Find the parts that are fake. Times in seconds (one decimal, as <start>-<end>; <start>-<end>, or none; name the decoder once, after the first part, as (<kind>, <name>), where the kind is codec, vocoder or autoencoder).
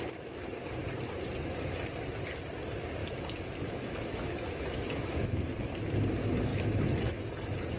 3.0-5.5 (autoencoder, DAC-VAE); 6.5-7.3